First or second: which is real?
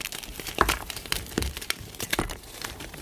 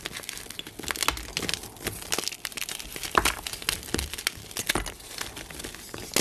second